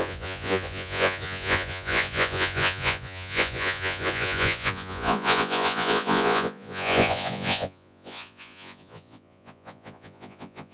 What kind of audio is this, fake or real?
fake